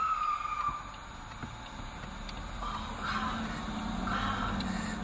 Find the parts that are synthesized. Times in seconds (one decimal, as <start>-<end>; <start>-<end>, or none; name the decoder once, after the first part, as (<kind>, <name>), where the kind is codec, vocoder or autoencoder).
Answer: none